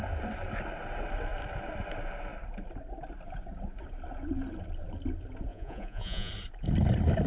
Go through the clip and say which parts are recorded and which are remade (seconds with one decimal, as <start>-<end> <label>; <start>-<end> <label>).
0.0-5.5 recorded; 5.5-6.3 remade; 6.3-7.3 recorded